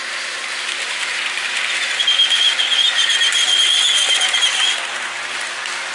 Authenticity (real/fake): real